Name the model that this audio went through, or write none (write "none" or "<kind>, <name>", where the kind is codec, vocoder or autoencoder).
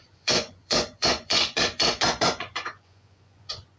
vocoder, Vocos